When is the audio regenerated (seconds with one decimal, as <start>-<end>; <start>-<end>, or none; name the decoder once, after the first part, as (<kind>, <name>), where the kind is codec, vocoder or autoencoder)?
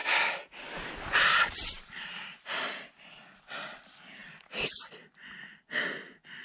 0.0-3.8 (vocoder, BigVGAN v2)